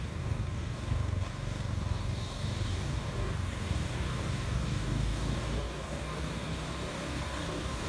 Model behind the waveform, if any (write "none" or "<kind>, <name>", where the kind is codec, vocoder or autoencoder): codec, DAC